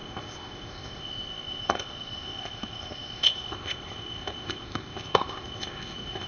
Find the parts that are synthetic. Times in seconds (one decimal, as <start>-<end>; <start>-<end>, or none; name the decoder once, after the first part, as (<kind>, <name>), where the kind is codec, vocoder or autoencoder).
0.0-6.3 (codec, ZipCodec)